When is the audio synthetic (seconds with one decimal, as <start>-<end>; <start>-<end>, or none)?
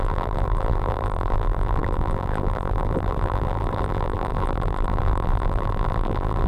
0.0-6.5